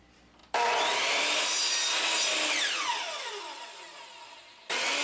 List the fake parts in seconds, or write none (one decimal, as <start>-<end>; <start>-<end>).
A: none